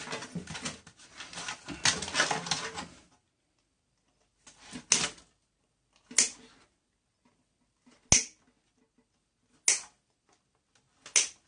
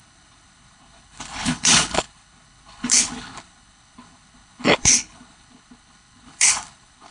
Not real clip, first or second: second